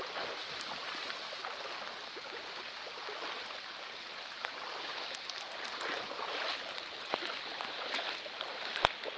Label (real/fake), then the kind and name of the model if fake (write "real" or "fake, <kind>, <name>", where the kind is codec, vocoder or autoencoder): real